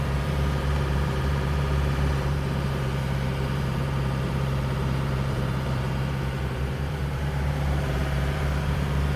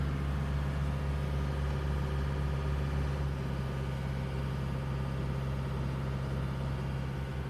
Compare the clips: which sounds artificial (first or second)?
first